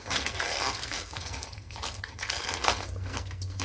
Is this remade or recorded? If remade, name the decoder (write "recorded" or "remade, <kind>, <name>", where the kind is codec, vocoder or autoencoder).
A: remade, codec, SNAC